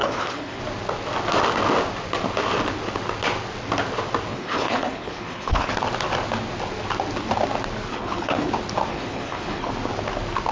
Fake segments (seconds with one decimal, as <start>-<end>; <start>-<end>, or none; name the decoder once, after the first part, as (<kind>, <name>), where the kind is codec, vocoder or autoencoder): 0.0-0.6 (codec, HILCodec); 4.3-5.7; 7.9-8.5; 8.9-9.7